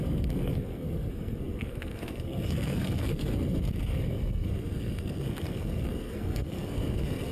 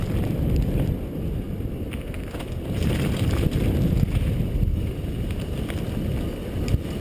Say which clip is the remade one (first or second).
first